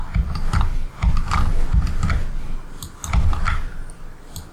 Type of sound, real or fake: real